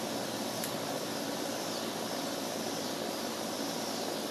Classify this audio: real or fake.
real